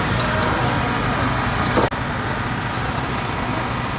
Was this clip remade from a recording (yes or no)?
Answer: no